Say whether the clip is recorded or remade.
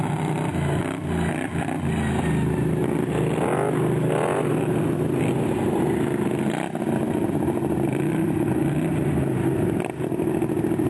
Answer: recorded